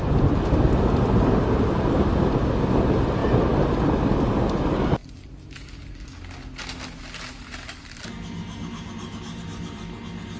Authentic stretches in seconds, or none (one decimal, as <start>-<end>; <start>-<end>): 0.0-10.4